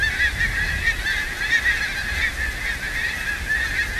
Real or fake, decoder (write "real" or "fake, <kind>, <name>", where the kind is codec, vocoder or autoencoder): real